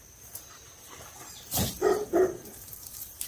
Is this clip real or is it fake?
fake